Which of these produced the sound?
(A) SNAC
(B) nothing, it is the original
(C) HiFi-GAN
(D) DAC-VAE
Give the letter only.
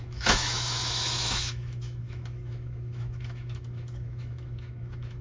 D